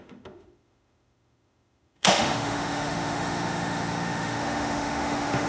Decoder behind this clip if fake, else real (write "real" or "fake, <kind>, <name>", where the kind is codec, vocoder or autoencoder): fake, autoencoder, DAC-VAE